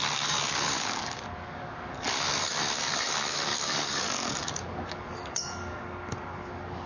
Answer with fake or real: fake